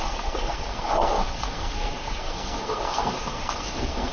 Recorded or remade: remade